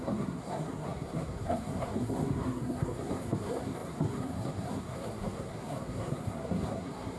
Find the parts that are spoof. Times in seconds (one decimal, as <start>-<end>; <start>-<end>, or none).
0.0-7.2